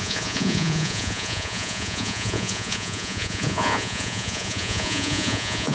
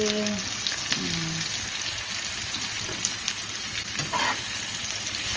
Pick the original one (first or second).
second